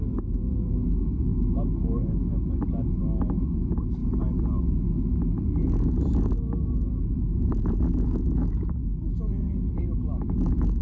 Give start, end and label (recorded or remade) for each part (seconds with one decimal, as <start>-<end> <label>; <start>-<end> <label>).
0.0-4.0 remade; 4.0-4.6 recorded; 4.6-8.9 remade; 8.9-9.7 recorded; 9.7-10.8 remade